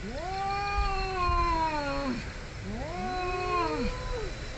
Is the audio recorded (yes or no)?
yes